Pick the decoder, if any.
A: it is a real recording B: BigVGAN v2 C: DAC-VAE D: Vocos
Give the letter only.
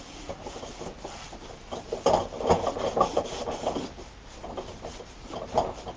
A